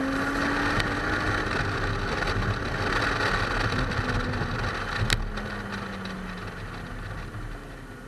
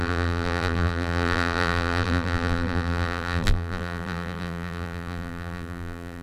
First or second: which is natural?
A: first